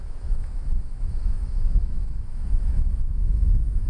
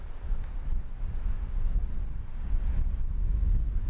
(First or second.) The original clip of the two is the second